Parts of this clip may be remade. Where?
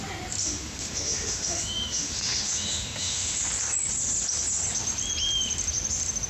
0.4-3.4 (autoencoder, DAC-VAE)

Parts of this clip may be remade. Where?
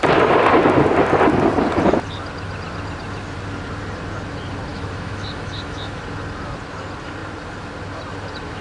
4.7-6.0 (autoencoder, DAC-VAE)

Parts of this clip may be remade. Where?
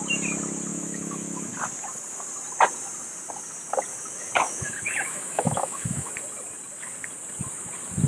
0.7-1.5 (autoencoder, DAC-VAE); 3.9-6.1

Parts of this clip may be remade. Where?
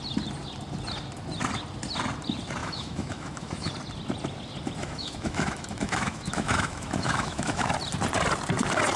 2.6-3.7 (autoencoder, DAC-VAE); 4.8-7.7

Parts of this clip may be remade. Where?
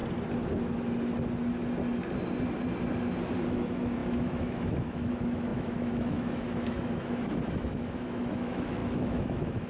3.5-9.7 (autoencoder, DAC-VAE)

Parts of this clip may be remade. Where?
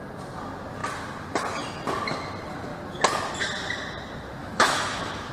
4.4-5.3 (autoencoder, DAC-VAE)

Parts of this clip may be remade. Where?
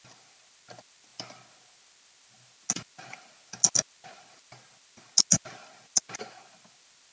none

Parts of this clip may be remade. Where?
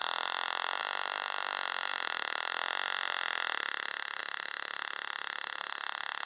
none